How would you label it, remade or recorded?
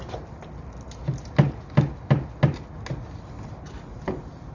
recorded